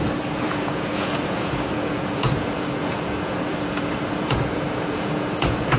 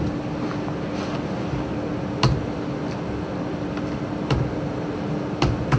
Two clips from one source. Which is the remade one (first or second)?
first